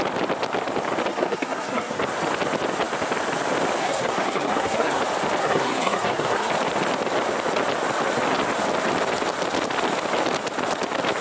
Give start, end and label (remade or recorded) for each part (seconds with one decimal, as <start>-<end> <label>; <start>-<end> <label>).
0.0-1.1 recorded; 1.1-2.0 remade; 2.0-3.8 recorded; 3.8-5.0 remade; 5.0-5.4 recorded; 5.4-6.5 remade; 6.5-11.2 recorded